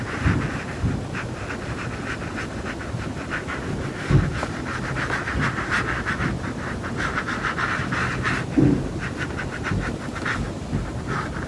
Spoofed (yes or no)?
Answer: no